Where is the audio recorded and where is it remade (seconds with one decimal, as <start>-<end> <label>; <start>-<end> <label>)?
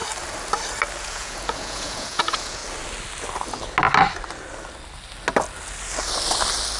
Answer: 0.0-1.0 recorded; 1.0-2.6 remade; 2.6-6.8 recorded